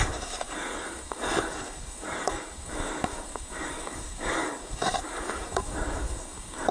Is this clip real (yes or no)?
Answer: no